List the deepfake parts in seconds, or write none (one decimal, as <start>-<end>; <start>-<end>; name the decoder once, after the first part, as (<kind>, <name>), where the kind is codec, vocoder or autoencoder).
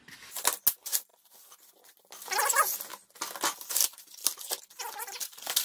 none